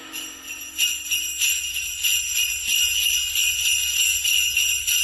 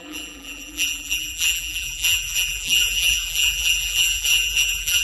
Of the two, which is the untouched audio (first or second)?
first